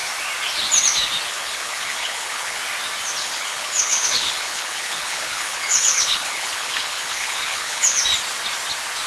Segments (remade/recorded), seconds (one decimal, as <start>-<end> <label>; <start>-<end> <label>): 0.0-1.3 recorded; 1.3-2.6 remade; 2.6-3.2 recorded; 3.2-8.0 remade; 8.0-9.1 recorded